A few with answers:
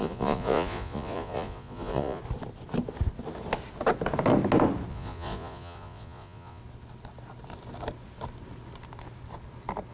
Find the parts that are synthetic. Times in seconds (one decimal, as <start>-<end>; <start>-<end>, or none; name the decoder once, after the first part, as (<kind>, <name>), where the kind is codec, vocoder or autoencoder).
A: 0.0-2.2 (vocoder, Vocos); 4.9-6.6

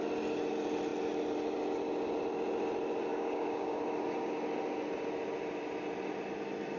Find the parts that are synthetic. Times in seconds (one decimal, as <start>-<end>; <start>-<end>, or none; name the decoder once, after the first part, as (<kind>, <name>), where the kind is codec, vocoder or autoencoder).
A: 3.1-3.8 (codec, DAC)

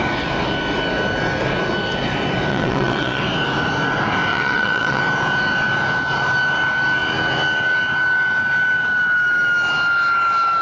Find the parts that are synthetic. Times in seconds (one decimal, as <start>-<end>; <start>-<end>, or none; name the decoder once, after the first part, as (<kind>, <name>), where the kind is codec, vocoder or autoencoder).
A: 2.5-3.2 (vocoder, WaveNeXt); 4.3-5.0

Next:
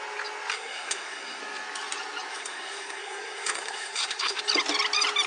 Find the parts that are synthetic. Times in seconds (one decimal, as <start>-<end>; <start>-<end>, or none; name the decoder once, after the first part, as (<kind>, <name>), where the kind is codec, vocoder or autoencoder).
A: 0.5-1.4 (codec, SNAC); 2.3-4.4

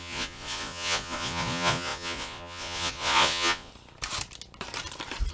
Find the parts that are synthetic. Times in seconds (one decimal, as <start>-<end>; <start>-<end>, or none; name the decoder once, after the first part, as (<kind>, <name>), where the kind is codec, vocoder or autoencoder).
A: 0.0-3.7 (vocoder, Vocos)